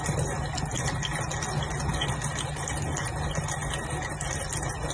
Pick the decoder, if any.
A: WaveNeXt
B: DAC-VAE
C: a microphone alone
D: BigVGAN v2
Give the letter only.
C